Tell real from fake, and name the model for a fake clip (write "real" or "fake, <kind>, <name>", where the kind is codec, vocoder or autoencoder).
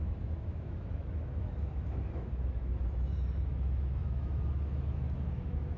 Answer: fake, autoencoder, DAC-VAE